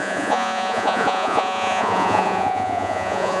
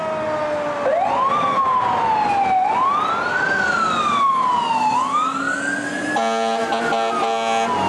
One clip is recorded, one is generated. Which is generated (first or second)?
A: first